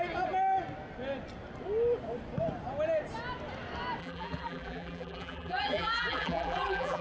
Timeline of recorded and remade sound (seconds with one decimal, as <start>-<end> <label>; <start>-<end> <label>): 0.0-4.0 recorded; 4.0-7.0 remade